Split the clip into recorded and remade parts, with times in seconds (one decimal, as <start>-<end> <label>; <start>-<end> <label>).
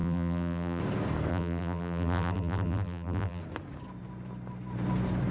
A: 0.0-0.8 remade; 0.8-1.3 recorded; 1.3-3.4 remade; 3.4-5.3 recorded